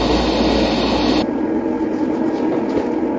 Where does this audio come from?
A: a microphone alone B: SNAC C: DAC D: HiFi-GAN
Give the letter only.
A